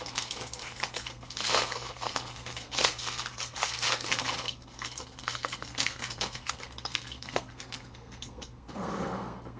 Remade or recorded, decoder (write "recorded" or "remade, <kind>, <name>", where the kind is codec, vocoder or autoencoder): remade, codec, SNAC